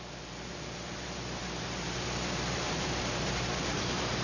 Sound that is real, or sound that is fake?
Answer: fake